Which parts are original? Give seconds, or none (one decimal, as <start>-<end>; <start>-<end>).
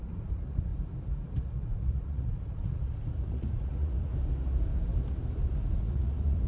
0.7-1.4; 4.1-5.8